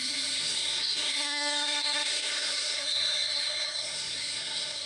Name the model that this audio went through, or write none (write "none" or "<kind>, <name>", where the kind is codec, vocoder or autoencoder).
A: codec, SNAC